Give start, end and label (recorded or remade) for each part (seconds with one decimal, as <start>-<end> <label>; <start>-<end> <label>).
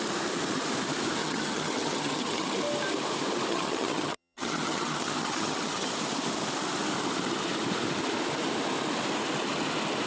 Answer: 0.0-1.2 recorded; 1.2-2.6 remade; 2.6-3.5 recorded; 3.5-5.9 remade; 5.9-10.1 recorded